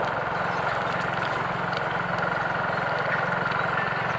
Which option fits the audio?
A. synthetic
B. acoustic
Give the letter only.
B